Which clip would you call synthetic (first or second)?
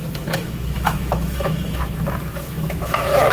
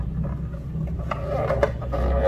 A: first